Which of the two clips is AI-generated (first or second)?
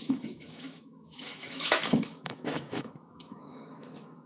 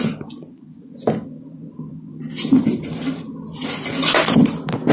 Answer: first